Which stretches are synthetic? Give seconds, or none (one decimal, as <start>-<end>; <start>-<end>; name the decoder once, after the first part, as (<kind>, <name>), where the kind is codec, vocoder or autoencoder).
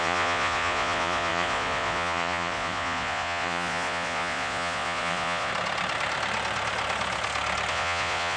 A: 0.0-5.5 (vocoder, Vocos); 7.7-8.4